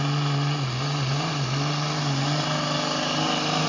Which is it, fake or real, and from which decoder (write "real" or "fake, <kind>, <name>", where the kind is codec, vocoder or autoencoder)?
real